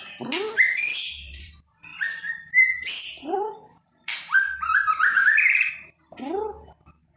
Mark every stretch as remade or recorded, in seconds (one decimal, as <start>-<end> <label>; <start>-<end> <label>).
0.0-0.9 recorded; 0.9-1.5 remade; 1.5-1.9 recorded; 1.9-5.7 remade; 5.7-7.2 recorded